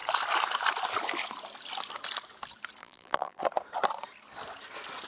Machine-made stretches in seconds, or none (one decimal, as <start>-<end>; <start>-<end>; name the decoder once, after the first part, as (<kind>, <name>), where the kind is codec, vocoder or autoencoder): 2.8-3.4 (vocoder, BigVGAN v2)

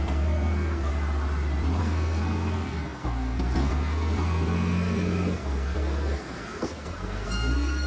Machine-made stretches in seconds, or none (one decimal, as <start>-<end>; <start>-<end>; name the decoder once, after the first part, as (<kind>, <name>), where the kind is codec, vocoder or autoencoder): 0.0-0.9 (codec, SNAC); 1.8-7.9

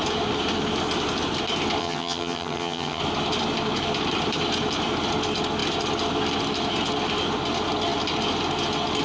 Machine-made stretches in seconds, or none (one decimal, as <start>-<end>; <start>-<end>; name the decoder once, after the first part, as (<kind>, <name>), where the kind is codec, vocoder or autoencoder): 1.8-3.0 (vocoder, HiFi-GAN)

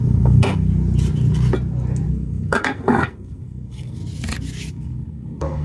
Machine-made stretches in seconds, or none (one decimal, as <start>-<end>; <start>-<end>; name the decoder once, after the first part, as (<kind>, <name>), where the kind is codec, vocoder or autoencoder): 0.0-0.7 (codec, SNAC); 2.1-4.0; 4.7-5.6